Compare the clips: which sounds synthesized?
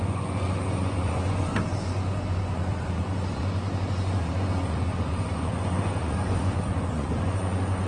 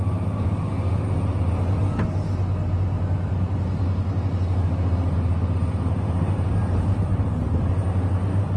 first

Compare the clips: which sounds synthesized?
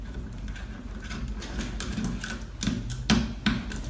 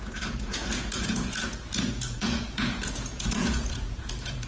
second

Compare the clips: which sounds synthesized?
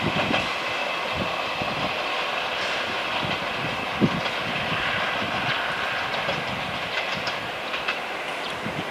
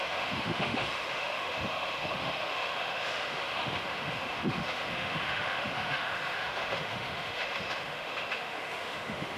second